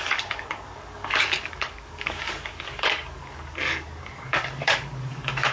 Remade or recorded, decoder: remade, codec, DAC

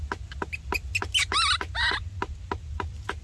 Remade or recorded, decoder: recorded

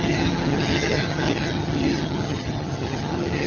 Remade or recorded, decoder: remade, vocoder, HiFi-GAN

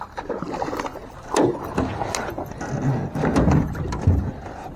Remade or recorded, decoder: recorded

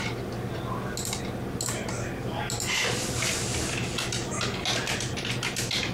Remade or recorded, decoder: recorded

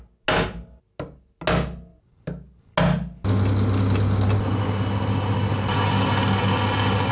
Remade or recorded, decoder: recorded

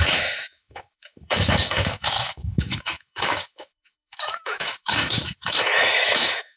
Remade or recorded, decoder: remade, autoencoder, DAC-VAE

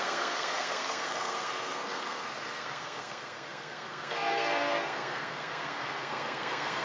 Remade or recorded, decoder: remade, codec, SNAC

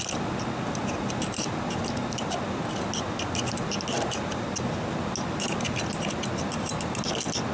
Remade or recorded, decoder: recorded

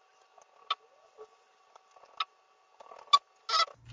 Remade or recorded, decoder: recorded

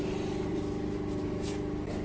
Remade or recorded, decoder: recorded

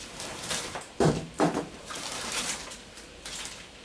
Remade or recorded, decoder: remade, vocoder, BigVGAN v2